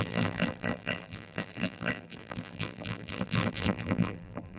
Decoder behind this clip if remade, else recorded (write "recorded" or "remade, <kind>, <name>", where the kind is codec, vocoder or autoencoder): remade, vocoder, BigVGAN v2